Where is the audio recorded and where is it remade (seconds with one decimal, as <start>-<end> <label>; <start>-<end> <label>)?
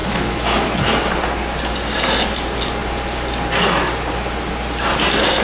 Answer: 0.0-0.8 remade; 0.8-5.4 recorded